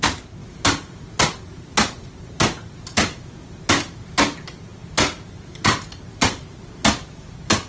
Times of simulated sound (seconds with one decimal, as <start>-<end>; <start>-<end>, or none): none